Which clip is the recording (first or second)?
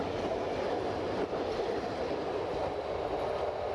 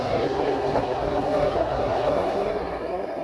first